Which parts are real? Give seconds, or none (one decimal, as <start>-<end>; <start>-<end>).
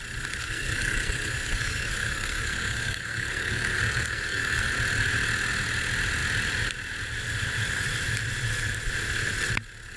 0.0-0.4; 4.7-10.0